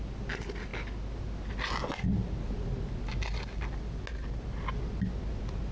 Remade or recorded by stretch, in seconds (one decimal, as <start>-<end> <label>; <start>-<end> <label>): 0.0-5.7 recorded